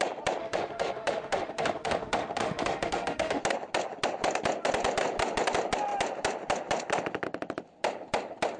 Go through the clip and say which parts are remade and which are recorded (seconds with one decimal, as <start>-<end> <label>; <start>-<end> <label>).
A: 0.0-0.4 recorded; 0.4-3.4 remade; 3.4-8.6 recorded